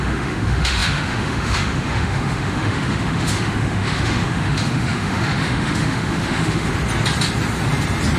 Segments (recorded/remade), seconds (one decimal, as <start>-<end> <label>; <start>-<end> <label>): 0.0-6.7 remade; 6.7-8.2 recorded